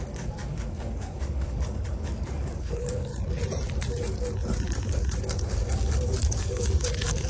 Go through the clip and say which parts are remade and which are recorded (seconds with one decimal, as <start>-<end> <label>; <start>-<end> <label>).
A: 0.0-3.1 remade; 3.1-5.2 recorded; 5.2-7.3 remade